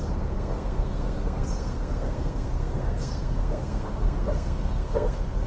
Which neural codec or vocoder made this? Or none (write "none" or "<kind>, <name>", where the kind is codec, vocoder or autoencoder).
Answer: codec, SNAC